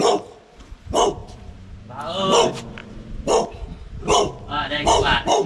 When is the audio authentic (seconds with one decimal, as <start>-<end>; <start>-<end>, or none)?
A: 0.0-1.2; 1.7-2.8; 3.7-5.5